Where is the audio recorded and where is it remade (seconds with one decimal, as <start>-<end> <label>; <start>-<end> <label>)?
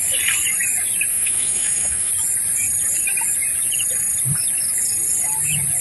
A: 0.0-1.1 recorded; 1.1-2.1 remade; 2.1-5.8 recorded